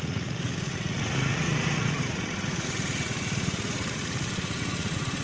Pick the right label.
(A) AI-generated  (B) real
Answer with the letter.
A